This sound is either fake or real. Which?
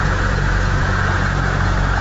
fake